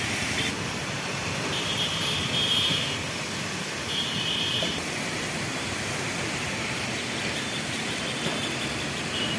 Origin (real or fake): fake